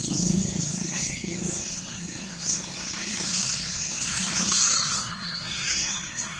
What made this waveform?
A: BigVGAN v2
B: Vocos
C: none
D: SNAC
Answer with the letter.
D